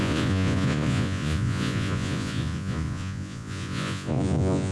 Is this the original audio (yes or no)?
no